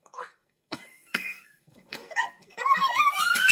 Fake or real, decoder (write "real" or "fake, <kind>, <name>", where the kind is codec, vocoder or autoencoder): fake, codec, SNAC